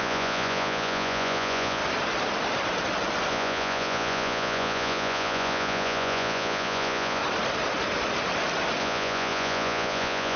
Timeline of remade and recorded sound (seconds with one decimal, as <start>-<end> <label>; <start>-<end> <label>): 0.0-1.8 remade; 1.8-3.3 recorded; 3.3-7.2 remade; 7.2-8.8 recorded; 8.8-10.4 remade